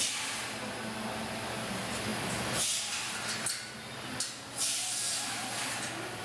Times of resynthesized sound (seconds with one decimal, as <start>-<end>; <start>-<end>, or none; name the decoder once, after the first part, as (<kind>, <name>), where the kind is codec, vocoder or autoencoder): none